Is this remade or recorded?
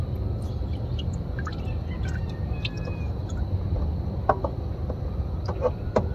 recorded